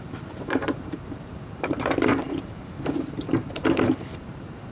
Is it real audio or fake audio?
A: fake